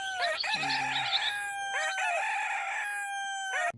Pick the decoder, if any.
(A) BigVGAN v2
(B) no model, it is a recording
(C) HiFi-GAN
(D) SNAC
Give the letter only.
B